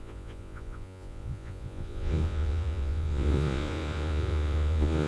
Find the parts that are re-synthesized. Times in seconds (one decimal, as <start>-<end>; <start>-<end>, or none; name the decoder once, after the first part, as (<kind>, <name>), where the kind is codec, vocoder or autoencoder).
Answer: 0.0-5.1 (vocoder, Vocos)